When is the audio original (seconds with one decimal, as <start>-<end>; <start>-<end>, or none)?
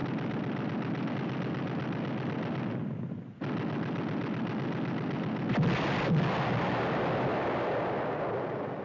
0.0-8.8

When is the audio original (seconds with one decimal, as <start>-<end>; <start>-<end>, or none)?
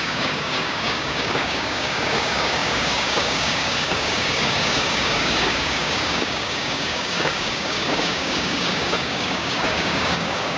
none